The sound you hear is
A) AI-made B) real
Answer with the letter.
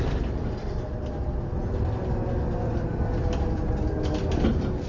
B